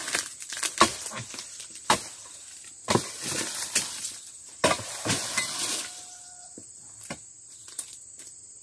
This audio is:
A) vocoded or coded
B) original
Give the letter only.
A